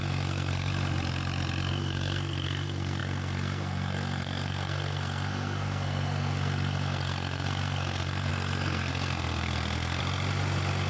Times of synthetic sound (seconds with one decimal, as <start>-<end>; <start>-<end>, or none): 0.0-0.7; 1.7-10.0